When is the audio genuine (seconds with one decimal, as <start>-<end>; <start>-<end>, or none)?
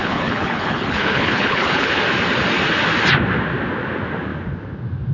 2.0-5.1